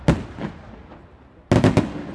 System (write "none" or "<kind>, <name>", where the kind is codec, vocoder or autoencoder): none